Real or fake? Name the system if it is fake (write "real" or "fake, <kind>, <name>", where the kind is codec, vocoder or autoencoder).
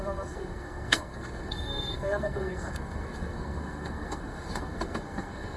fake, codec, SNAC